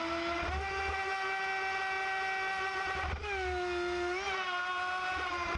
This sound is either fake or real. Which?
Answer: real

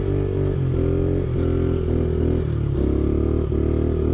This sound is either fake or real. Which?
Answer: real